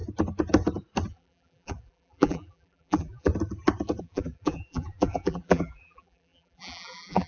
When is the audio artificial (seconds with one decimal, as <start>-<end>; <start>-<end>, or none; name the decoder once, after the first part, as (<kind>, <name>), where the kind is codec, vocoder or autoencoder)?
1.1-3.3 (vocoder, BigVGAN v2); 4.0-7.3